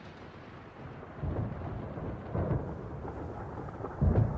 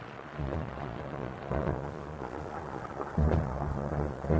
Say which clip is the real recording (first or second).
first